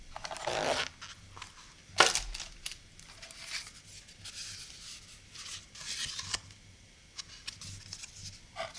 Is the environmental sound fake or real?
real